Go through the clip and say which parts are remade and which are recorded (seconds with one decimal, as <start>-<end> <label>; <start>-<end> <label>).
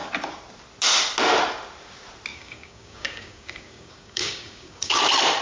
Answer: 0.0-2.3 recorded; 2.3-5.0 remade; 5.0-5.4 recorded